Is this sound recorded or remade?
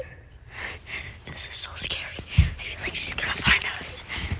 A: recorded